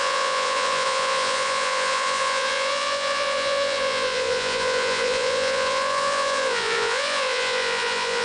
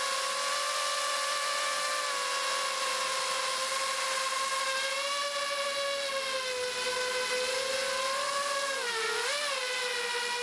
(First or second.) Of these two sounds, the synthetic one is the first